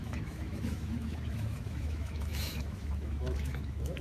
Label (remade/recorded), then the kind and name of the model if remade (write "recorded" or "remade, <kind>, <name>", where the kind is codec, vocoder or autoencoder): remade, autoencoder, DAC-VAE